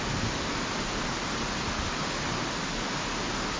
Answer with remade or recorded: recorded